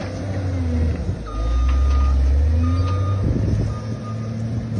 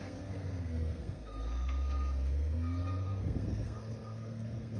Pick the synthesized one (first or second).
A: second